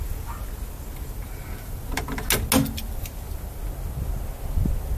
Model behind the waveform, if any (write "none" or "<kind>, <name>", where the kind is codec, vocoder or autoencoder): none